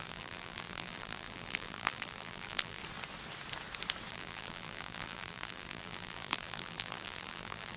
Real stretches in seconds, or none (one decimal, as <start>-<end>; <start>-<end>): 2.8-4.1